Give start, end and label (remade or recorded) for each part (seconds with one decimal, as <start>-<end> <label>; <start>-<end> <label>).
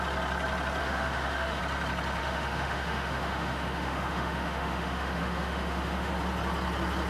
0.0-0.8 recorded; 0.8-1.6 remade; 1.6-2.2 recorded; 2.2-6.1 remade; 6.1-7.1 recorded